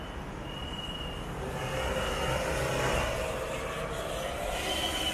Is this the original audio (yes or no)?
yes